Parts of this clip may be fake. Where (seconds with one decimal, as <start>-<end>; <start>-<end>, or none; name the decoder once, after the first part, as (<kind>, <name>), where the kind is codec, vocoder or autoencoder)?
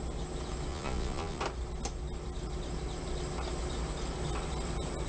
0.7-1.4 (vocoder, Vocos)